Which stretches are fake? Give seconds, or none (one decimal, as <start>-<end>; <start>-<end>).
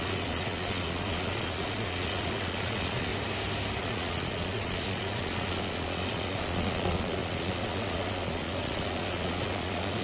0.0-3.1; 3.8-10.0